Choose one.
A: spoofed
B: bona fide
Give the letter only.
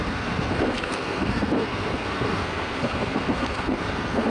A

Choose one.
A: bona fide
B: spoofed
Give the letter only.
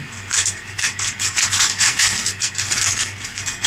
B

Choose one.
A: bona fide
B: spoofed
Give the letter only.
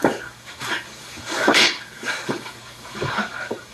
B